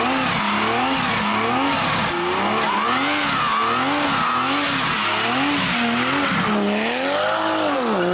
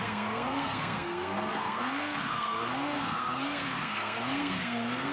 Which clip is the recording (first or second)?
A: first